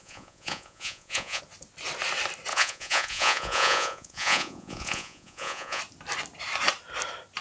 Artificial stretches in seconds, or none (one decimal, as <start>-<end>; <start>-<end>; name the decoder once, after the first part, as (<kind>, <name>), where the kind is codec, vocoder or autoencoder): 0.0-1.4 (vocoder, Vocos); 2.5-5.8